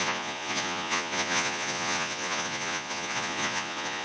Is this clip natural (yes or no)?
no